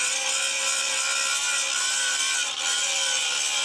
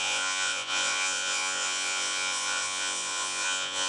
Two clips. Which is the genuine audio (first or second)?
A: first